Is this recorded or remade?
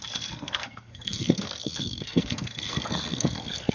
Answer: remade